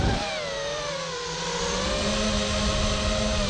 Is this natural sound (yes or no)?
yes